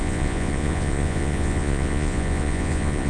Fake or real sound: fake